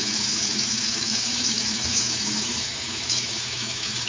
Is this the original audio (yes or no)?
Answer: no